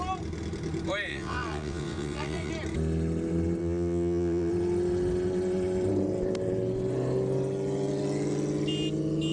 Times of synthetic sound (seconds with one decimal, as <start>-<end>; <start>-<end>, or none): 1.1-2.5; 3.6-4.5